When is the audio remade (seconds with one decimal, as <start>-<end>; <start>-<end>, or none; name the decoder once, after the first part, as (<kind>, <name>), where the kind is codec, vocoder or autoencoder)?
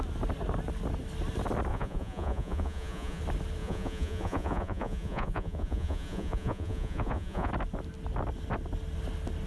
1.7-3.2 (vocoder, Vocos); 3.6-7.5